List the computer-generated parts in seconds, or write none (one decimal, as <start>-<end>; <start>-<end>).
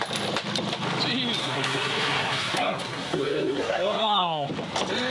1.4-4.5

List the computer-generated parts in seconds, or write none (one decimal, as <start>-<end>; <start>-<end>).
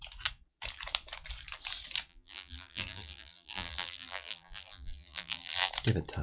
2.1-5.7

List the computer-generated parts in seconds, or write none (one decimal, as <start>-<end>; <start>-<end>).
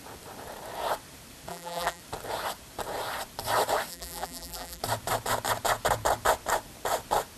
1.5-2.0; 3.9-4.8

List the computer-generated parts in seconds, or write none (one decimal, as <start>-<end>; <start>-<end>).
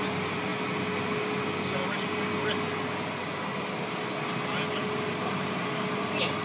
none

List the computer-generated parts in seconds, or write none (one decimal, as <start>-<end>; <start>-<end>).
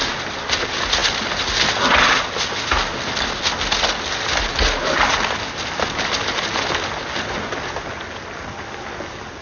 none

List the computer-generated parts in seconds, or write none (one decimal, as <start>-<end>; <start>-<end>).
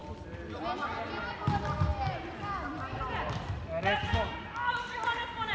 none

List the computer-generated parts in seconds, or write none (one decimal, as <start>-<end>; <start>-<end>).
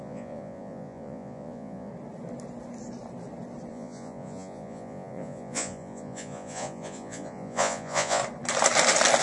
0.0-1.9; 3.7-8.2